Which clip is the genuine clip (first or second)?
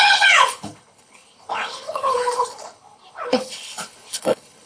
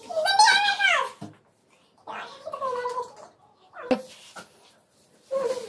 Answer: second